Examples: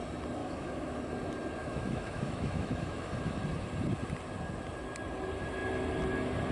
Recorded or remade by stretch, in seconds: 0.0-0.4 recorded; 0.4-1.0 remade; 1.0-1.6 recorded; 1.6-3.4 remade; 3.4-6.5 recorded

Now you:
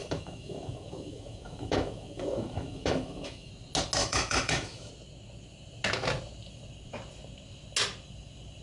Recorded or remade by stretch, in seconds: 0.0-3.5 remade; 3.5-4.0 recorded; 4.0-4.9 remade; 4.9-8.6 recorded

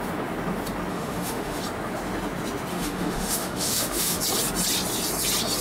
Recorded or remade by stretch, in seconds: 0.0-0.9 recorded; 0.9-1.6 remade; 1.6-2.7 recorded; 2.7-4.2 remade; 4.2-5.6 recorded

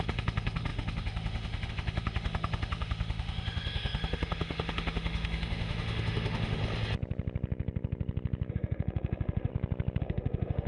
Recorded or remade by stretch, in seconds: 0.0-6.6 remade; 6.6-8.5 recorded; 8.5-9.5 remade; 9.5-10.0 recorded; 10.0-10.7 remade

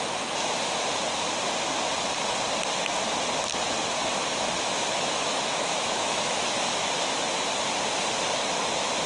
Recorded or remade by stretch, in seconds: 0.0-4.0 recorded; 4.0-6.6 remade; 6.6-9.1 recorded

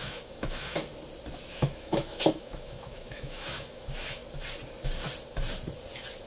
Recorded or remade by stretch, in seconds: 0.0-0.9 remade; 0.9-1.5 recorded; 1.5-4.2 remade; 4.2-6.3 recorded

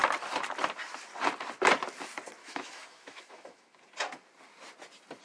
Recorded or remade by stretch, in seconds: 0.0-2.4 recorded; 2.4-3.8 remade; 3.8-5.2 recorded